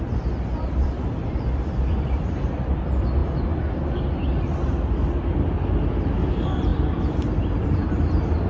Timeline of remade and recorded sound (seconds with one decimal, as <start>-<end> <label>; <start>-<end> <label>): 0.0-3.2 remade; 3.2-6.3 recorded; 6.3-8.5 remade